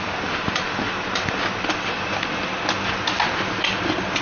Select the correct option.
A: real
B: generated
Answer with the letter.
A